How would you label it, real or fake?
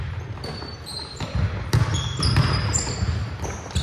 real